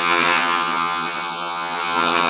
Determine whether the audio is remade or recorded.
remade